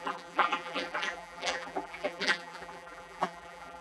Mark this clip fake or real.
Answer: fake